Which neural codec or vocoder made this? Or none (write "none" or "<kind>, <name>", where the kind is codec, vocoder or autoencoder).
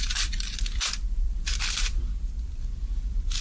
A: vocoder, BigVGAN v2